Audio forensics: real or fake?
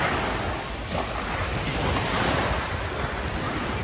real